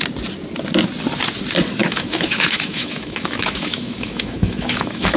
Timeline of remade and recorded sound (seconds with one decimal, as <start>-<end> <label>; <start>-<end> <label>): 0.0-1.8 recorded; 1.8-5.2 remade